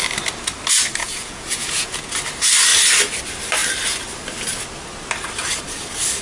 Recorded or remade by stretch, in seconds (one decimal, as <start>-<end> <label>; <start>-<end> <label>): 0.0-1.0 recorded; 1.0-2.1 remade; 2.1-6.2 recorded